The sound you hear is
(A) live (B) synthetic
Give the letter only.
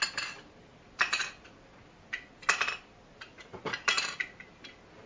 A